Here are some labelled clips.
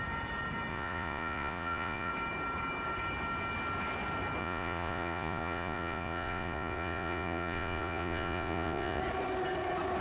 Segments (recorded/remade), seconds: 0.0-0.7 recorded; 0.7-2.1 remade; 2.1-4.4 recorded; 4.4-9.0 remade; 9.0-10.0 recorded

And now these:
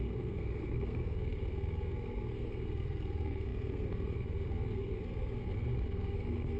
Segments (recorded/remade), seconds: 0.0-6.6 remade

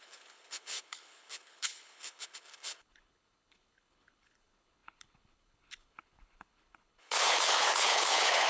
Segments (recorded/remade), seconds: 0.0-8.5 remade

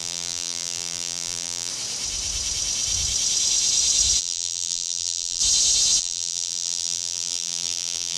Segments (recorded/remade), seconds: 0.0-1.7 remade; 1.7-4.2 recorded; 4.2-5.4 remade; 5.4-6.0 recorded; 6.0-8.2 remade

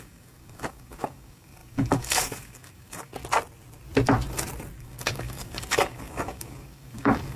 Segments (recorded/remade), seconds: 0.0-3.1 remade; 3.1-4.8 recorded; 4.8-7.4 remade

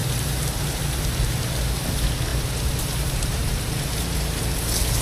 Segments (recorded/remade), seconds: 0.0-1.2 remade; 1.2-2.3 recorded; 2.3-4.4 remade; 4.4-5.0 recorded

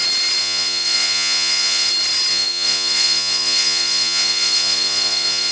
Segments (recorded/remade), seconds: 0.0-0.4 recorded; 0.4-1.9 remade; 1.9-2.3 recorded; 2.3-5.5 remade